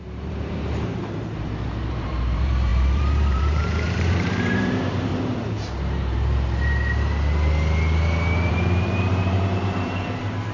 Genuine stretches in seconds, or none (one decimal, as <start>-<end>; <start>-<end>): 5.1-8.5